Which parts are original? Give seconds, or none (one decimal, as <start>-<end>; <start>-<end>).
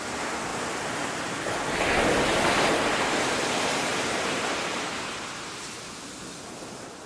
0.0-3.9; 4.9-7.1